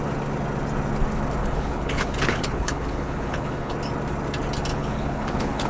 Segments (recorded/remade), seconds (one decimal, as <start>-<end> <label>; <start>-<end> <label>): 0.0-1.4 recorded; 1.4-3.7 remade; 3.7-4.7 recorded; 4.7-5.7 remade